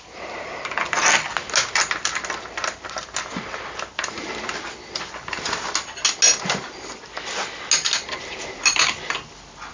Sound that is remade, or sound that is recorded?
recorded